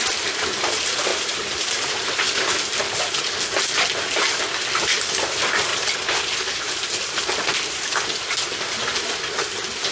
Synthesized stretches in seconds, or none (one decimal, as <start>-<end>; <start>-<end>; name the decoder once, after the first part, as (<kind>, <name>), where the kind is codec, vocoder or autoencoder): none